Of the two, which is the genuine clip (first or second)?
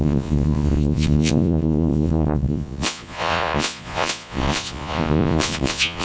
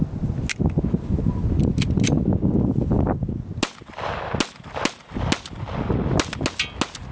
second